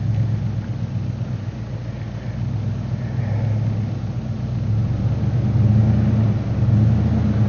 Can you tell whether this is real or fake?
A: real